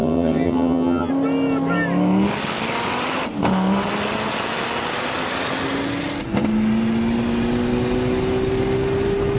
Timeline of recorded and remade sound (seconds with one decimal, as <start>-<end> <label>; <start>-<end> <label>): 0.0-1.1 remade; 1.1-9.4 recorded